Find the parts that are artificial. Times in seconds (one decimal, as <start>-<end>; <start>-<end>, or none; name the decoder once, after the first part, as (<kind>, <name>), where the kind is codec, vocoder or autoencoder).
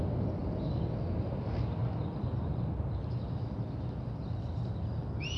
none